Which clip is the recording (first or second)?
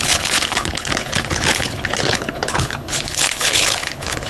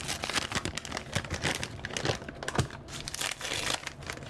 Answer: second